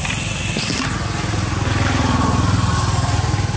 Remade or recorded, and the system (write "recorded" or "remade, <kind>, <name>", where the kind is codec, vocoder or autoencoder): recorded